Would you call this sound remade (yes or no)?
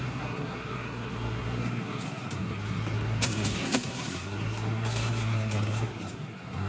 yes